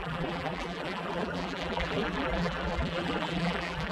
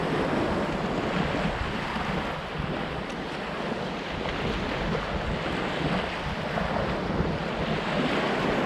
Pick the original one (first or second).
second